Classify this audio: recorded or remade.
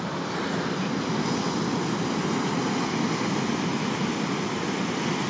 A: recorded